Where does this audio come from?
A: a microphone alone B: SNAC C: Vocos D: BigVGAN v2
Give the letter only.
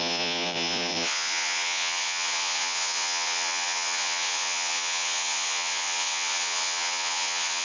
C